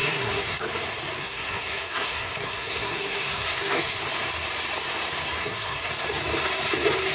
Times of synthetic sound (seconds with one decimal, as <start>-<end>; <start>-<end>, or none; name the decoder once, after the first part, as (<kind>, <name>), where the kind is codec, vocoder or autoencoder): 0.0-0.6 (codec, SNAC); 1.2-4.0; 5.4-5.9